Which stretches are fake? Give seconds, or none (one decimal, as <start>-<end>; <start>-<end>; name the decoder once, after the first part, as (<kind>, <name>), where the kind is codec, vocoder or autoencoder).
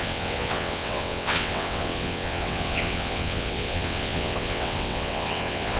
0.0-5.8 (vocoder, WaveNeXt)